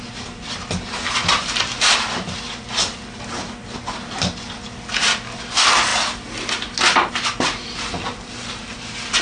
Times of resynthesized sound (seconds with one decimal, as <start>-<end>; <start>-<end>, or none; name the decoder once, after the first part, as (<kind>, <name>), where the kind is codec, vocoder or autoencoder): none